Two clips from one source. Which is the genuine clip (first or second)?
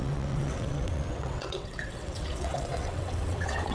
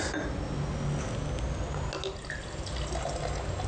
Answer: second